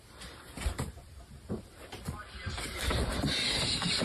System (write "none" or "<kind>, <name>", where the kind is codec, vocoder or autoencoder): vocoder, BigVGAN v2